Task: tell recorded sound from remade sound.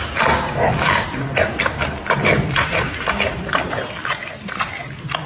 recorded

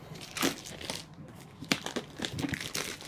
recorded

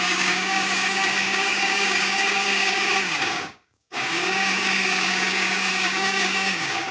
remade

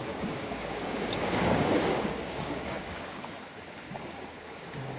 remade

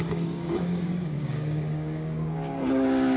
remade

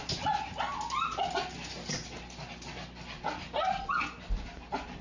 recorded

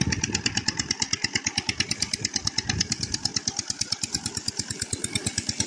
recorded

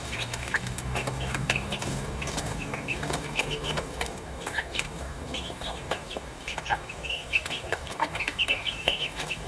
remade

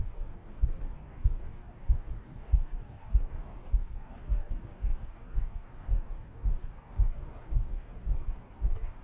remade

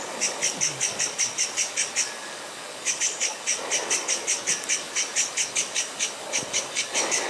remade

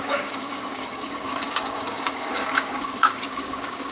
remade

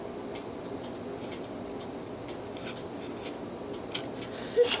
recorded